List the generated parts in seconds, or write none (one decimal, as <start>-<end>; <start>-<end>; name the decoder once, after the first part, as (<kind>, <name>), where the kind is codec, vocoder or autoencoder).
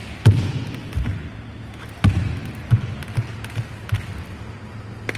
none